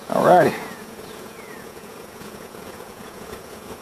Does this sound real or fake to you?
fake